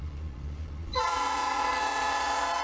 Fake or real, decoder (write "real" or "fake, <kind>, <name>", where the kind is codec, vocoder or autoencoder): fake, vocoder, Vocos